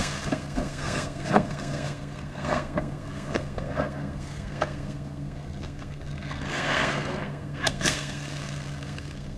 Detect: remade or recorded remade